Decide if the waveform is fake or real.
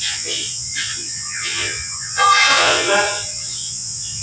fake